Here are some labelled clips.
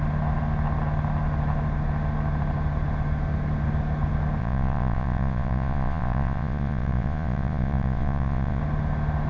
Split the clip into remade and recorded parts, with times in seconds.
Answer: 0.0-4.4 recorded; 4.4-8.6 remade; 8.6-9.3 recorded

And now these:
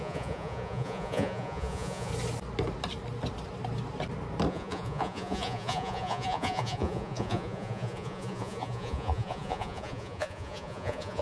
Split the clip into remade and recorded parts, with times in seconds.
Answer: 0.0-2.1 remade; 2.1-4.5 recorded; 4.5-11.2 remade